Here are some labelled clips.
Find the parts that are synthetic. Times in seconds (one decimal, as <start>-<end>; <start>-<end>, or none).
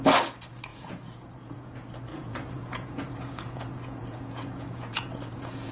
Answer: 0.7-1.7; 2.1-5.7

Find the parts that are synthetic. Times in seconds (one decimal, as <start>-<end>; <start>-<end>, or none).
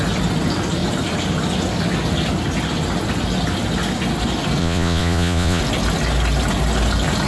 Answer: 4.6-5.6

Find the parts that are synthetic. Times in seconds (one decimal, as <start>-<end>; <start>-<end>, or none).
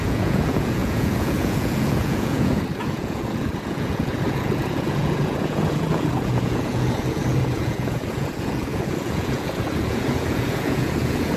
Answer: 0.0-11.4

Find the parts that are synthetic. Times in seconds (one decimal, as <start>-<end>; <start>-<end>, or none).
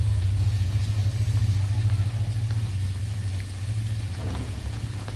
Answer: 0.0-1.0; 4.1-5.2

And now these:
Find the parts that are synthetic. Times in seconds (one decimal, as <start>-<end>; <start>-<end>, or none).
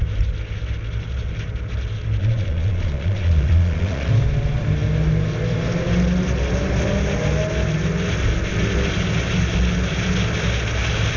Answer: 2.2-4.1